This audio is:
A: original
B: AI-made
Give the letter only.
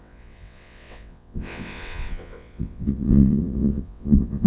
B